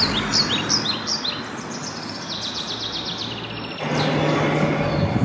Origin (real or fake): real